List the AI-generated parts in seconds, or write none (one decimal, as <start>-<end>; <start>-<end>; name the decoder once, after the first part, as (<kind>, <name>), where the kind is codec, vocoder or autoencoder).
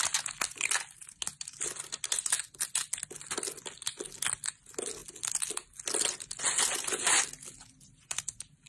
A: none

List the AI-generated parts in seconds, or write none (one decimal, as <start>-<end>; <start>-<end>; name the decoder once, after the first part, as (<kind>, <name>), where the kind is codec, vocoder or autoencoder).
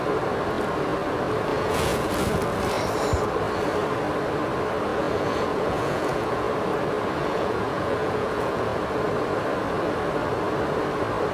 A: 1.5-2.1 (vocoder, Vocos); 4.9-6.5; 7.2-8.8